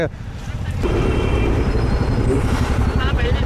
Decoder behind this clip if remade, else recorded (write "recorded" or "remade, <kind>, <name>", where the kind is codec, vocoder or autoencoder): remade, vocoder, BigVGAN v2